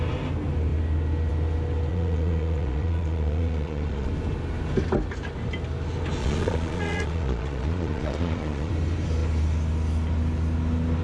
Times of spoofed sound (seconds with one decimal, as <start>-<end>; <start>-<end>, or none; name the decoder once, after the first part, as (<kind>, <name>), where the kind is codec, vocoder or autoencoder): 1.9-4.1 (vocoder, Vocos); 6.2-8.7